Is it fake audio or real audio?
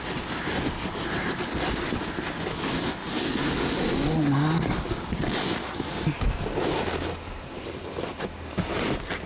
real